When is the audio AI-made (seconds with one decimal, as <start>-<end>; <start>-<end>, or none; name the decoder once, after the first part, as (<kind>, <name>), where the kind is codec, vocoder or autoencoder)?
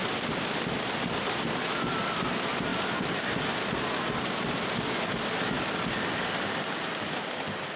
2.7-3.2 (vocoder, BigVGAN v2)